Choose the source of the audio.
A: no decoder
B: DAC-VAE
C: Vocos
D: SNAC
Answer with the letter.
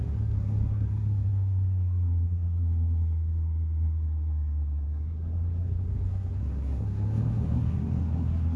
D